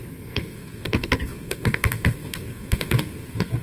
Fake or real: fake